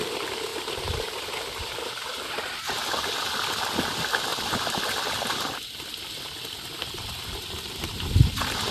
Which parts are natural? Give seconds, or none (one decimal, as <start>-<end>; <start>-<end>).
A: 0.0-0.5; 1.1-8.7